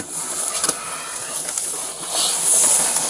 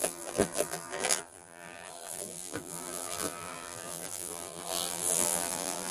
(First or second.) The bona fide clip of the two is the first